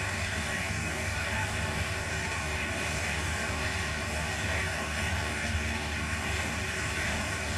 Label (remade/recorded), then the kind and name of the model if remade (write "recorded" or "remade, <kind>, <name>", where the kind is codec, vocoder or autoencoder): remade, codec, DAC